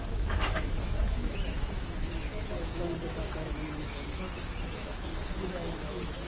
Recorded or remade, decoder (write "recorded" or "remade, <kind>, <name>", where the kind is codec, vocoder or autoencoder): remade, autoencoder, DAC-VAE